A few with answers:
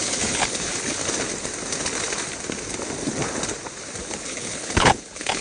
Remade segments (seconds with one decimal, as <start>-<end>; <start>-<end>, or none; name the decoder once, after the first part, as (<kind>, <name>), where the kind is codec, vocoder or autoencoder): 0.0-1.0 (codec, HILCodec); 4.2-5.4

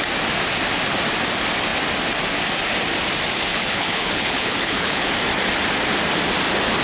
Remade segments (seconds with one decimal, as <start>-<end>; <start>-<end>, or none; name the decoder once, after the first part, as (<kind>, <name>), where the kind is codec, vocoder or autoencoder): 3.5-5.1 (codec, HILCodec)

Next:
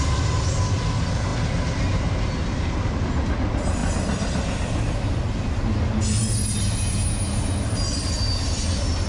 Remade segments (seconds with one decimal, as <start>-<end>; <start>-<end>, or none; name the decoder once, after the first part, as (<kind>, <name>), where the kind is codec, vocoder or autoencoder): none

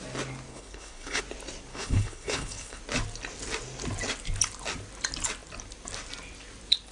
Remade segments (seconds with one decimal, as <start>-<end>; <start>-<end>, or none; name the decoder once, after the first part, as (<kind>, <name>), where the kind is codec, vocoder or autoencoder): 0.5-1.2 (codec, HILCodec); 1.7-2.8

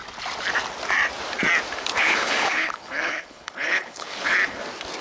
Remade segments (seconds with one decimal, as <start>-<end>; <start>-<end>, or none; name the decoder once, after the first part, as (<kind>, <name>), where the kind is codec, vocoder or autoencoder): 1.9-4.6 (codec, HILCodec)